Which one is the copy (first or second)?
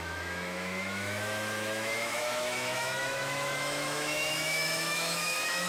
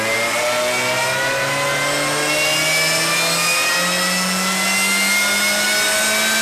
first